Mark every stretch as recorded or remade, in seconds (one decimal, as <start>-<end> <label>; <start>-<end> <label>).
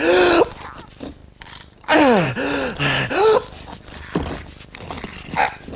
0.0-1.2 recorded; 1.2-2.3 remade; 2.3-5.8 recorded